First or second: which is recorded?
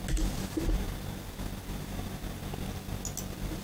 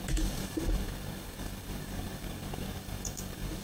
first